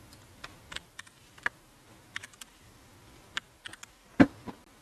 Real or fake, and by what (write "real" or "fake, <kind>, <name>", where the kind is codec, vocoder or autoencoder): real